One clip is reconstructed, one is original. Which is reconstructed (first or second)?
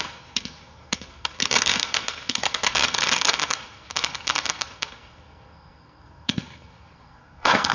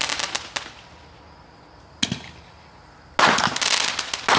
first